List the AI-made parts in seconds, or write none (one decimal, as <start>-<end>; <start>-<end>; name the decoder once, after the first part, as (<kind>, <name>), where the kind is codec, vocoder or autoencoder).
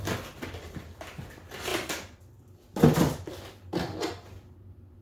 none